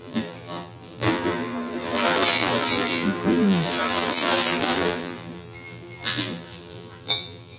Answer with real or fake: fake